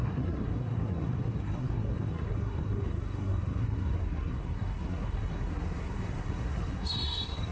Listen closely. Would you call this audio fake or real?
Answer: fake